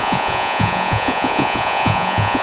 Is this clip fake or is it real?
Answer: fake